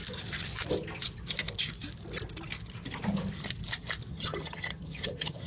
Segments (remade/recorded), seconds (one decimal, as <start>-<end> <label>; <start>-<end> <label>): 0.0-4.1 recorded; 4.1-5.5 remade